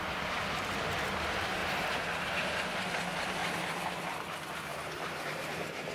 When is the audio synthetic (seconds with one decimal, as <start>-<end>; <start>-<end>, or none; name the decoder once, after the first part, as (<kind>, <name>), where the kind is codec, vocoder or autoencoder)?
none